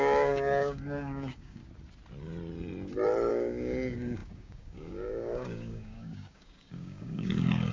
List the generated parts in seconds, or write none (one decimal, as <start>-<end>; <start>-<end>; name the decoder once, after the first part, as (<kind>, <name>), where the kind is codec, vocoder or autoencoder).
0.0-1.6 (codec, DAC); 3.3-7.7